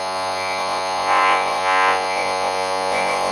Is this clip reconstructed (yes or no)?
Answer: yes